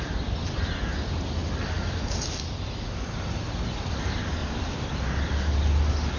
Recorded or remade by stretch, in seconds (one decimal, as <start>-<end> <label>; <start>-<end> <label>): 0.0-4.4 recorded; 4.4-5.2 remade; 5.2-6.2 recorded